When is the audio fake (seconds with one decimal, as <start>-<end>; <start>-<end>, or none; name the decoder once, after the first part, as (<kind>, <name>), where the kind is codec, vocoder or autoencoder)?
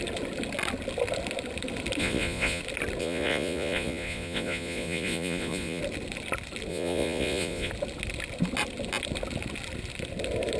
2.0-2.6 (vocoder, Vocos); 3.0-5.8; 6.7-7.7